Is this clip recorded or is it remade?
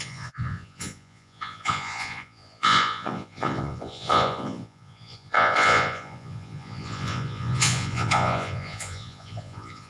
remade